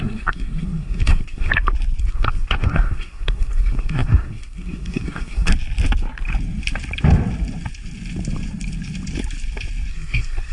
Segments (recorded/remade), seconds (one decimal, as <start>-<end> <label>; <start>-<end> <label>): 0.0-1.5 remade; 1.5-2.0 recorded; 2.0-5.5 remade; 5.5-9.9 recorded; 9.9-10.5 remade